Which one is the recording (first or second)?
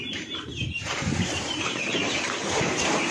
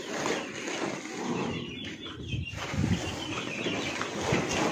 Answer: second